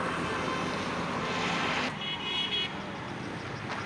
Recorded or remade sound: recorded